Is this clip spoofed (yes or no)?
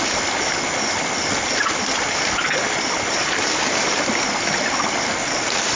no